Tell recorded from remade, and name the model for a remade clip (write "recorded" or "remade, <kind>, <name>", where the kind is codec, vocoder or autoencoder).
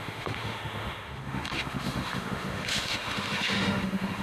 remade, autoencoder, DAC-VAE